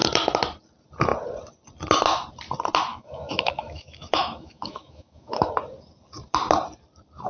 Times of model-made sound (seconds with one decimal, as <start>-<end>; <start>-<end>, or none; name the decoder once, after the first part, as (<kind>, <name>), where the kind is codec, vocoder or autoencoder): 2.9-5.5 (autoencoder, DAC-VAE)